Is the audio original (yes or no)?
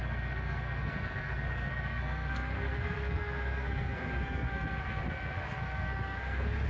no